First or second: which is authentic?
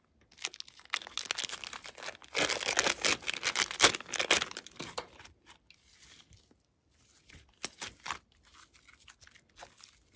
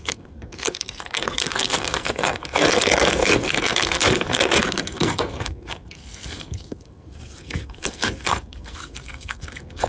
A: first